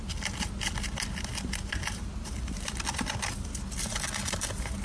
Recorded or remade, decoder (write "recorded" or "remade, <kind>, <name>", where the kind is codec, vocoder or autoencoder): recorded